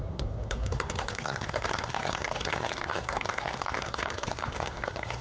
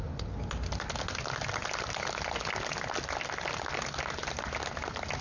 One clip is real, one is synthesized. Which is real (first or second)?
second